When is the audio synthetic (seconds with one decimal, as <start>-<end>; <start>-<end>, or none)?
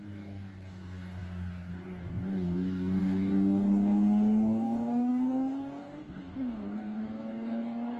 0.0-8.0